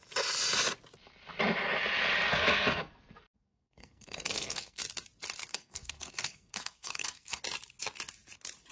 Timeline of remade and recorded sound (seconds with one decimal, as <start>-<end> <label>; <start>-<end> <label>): 0.0-2.3 recorded; 2.3-4.8 remade; 4.8-5.5 recorded; 5.5-7.4 remade; 7.4-8.7 recorded